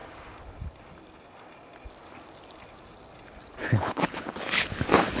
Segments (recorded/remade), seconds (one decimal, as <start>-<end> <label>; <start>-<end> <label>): 0.0-3.6 recorded; 3.6-5.2 remade